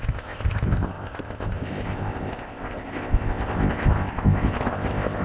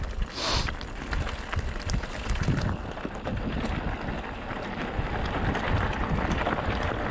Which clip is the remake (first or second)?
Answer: first